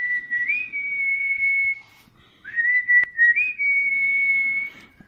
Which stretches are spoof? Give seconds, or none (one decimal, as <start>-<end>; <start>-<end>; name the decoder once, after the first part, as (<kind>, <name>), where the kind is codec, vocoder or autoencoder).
none